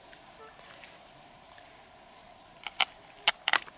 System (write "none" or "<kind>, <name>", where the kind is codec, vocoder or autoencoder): vocoder, BigVGAN v2